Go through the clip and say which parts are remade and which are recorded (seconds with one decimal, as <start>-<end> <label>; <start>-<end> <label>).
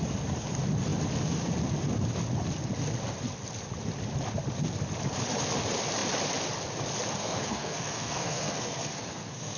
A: 0.0-7.2 recorded; 7.2-9.6 remade